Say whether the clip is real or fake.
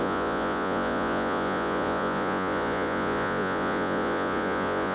fake